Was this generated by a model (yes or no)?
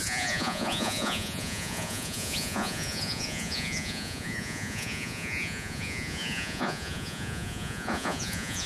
yes